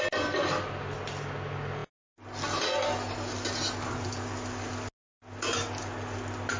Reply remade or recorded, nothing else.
recorded